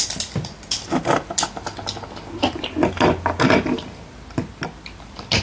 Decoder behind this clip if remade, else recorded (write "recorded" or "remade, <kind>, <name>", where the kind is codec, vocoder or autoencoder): recorded